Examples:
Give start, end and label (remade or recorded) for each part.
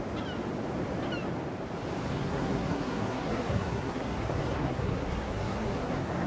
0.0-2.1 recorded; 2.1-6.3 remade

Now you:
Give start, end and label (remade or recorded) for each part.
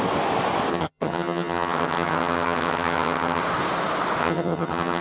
0.0-0.7 recorded; 0.7-3.4 remade; 3.4-4.2 recorded; 4.2-5.0 remade